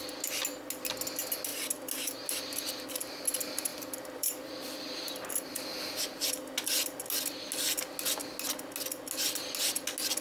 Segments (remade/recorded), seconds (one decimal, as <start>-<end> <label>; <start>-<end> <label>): 0.0-3.7 recorded; 3.7-5.9 remade; 5.9-10.2 recorded

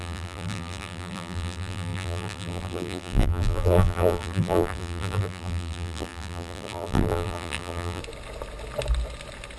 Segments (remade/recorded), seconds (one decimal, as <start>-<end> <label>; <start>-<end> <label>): 0.0-8.0 remade; 8.0-9.6 recorded

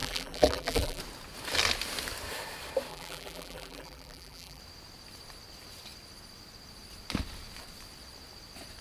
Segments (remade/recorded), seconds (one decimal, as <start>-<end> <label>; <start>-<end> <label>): 0.0-1.0 remade; 1.0-2.9 recorded; 2.9-4.6 remade; 4.6-8.8 recorded

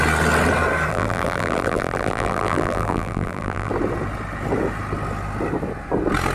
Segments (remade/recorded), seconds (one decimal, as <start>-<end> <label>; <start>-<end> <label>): 0.0-0.9 recorded; 0.9-3.7 remade; 3.7-6.3 recorded